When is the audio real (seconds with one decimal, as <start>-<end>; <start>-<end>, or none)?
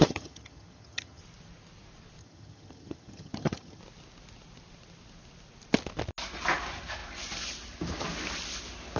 1.2-2.2; 3.8-9.0